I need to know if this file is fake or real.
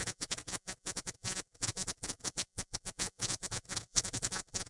fake